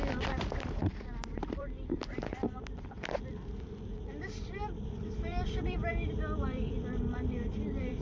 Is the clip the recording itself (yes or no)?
no